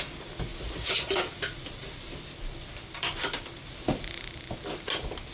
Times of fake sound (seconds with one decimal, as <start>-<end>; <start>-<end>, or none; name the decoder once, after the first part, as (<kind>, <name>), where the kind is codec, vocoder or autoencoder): none